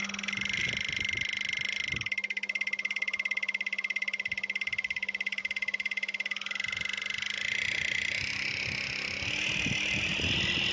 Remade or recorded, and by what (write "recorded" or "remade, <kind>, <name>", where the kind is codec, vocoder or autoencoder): recorded